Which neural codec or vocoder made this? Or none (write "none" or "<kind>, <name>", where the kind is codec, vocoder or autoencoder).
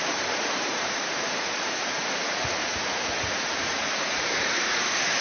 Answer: vocoder, Vocos